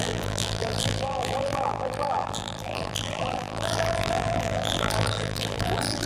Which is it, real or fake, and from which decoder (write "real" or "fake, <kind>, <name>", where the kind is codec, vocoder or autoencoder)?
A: fake, vocoder, BigVGAN v2